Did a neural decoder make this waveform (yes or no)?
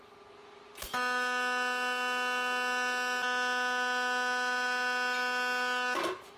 no